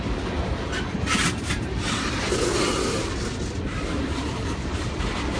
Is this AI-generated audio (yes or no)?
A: no